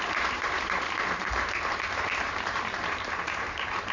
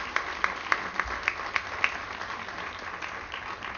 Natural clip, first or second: second